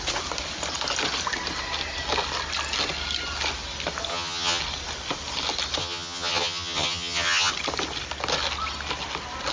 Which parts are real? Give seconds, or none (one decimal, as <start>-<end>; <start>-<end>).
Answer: 0.0-4.1; 4.6-5.8; 7.5-9.5